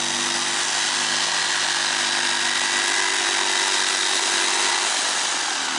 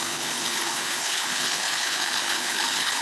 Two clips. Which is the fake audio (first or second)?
second